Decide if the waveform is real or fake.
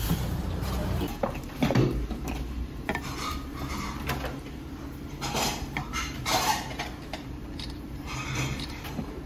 fake